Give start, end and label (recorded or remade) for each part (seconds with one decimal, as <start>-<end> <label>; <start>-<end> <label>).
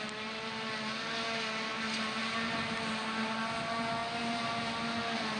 0.0-5.4 recorded